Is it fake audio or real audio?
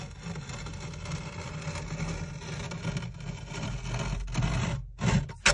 real